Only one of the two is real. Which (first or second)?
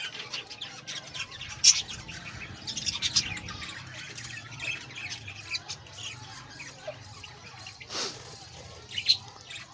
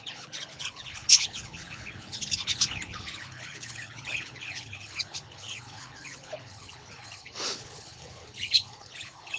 first